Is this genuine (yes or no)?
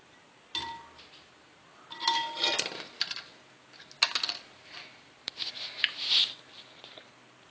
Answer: yes